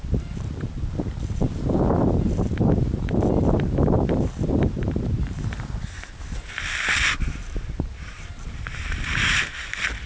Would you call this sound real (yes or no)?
no